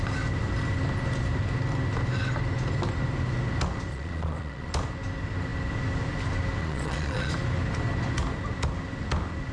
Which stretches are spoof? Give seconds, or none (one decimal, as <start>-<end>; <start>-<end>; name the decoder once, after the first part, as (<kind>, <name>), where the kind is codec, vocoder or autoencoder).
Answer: 3.9-4.7 (vocoder, Vocos); 6.6-7.3